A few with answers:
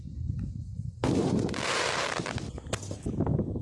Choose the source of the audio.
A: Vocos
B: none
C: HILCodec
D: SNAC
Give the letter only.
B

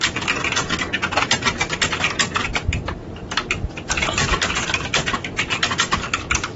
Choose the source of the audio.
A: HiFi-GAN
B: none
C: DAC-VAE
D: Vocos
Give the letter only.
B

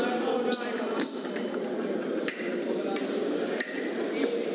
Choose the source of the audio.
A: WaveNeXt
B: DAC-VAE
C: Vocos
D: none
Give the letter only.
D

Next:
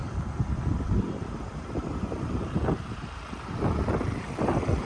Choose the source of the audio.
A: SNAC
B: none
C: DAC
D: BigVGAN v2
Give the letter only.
D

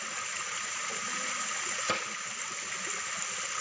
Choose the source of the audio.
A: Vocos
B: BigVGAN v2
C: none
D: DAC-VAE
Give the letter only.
C